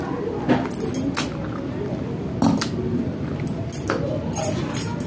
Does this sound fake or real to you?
real